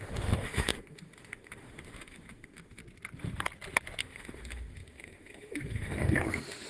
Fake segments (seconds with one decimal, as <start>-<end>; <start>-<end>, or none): 0.0-2.8; 4.0-6.7